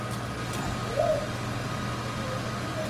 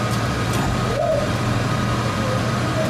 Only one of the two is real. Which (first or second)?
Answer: first